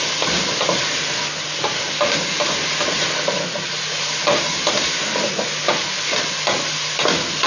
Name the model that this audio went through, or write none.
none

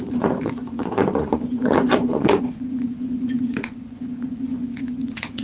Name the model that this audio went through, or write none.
vocoder, Vocos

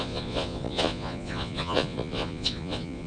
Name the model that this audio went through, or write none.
vocoder, Vocos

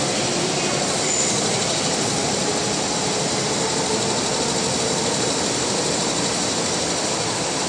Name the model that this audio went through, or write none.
none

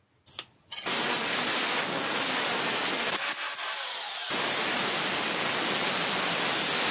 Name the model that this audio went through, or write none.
none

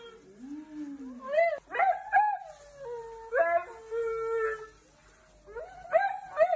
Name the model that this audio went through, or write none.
none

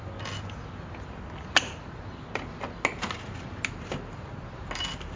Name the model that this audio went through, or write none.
none